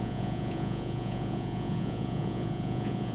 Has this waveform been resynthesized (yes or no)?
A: yes